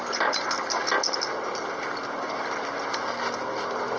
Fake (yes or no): no